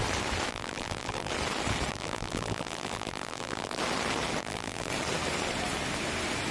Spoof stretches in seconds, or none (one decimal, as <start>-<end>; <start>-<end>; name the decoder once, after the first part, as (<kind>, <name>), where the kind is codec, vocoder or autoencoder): 0.5-1.3 (vocoder, BigVGAN v2); 1.9-3.8; 4.4-4.9